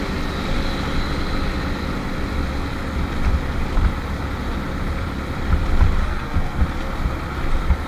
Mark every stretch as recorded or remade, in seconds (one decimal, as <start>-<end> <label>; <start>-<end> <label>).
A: 0.0-6.0 recorded; 6.0-6.6 remade; 6.6-7.9 recorded